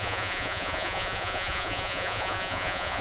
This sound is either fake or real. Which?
fake